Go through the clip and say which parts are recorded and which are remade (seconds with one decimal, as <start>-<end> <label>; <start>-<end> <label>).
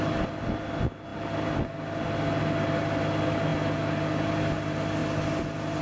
0.0-5.8 recorded